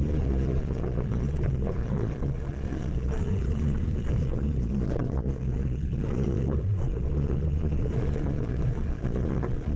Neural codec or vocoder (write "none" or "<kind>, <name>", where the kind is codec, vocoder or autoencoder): vocoder, Vocos